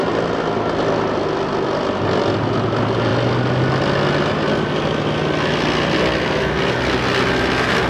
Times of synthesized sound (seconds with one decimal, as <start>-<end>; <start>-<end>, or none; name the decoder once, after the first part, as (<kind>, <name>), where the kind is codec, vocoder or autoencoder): none